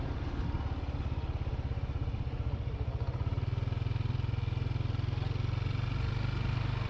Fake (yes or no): no